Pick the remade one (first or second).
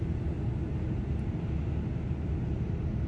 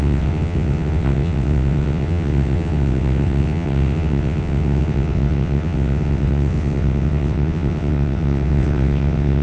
second